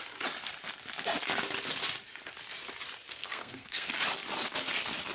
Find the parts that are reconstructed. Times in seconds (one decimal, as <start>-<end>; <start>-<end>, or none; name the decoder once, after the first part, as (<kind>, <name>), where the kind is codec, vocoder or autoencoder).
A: 3.2-3.9 (codec, SNAC)